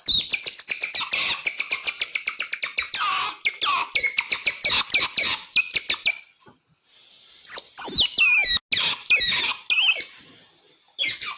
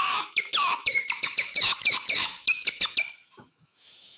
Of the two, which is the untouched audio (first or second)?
first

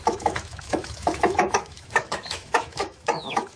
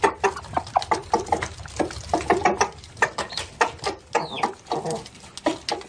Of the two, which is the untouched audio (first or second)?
second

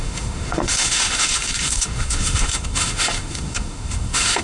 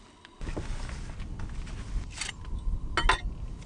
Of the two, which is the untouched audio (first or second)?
second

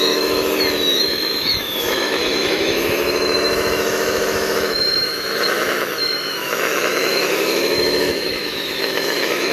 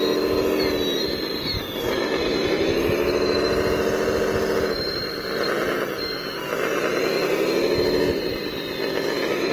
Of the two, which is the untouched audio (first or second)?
second